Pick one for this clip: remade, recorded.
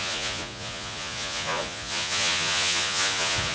remade